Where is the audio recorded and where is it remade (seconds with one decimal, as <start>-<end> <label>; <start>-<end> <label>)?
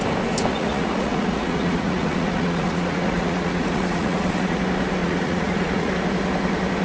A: 0.0-0.5 recorded; 0.5-4.6 remade; 4.6-5.0 recorded; 5.0-5.9 remade; 5.9-6.8 recorded